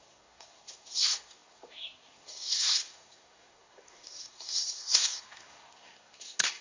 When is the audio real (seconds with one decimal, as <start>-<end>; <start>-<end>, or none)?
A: none